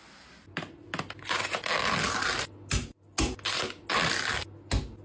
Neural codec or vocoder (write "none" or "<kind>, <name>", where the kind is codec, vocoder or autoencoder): none